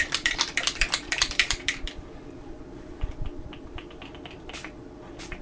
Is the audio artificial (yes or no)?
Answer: yes